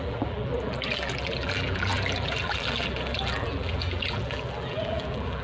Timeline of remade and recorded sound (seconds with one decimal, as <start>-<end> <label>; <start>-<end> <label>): 0.0-5.4 remade